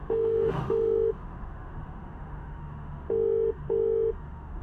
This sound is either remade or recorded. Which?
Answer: remade